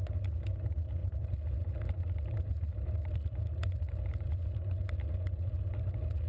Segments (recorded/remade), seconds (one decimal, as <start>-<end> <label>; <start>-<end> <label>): 0.0-6.3 recorded

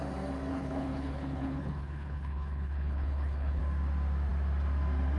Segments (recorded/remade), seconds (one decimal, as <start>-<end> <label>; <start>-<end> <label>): 0.0-0.5 recorded; 0.5-3.6 remade; 3.6-5.2 recorded

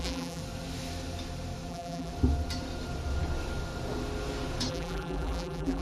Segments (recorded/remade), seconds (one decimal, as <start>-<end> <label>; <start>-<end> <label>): 0.0-0.4 remade; 0.4-1.7 recorded; 1.7-2.1 remade; 2.1-4.7 recorded; 4.7-5.8 remade

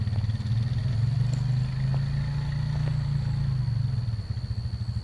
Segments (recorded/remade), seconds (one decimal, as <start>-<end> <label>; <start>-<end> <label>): 0.0-5.0 recorded